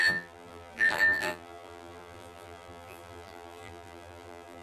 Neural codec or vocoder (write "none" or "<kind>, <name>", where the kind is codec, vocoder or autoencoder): vocoder, BigVGAN v2